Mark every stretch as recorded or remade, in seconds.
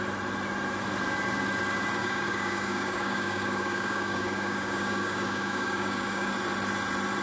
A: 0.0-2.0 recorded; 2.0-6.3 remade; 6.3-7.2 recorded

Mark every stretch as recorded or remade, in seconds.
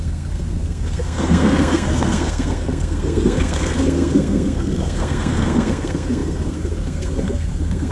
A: 0.0-7.9 remade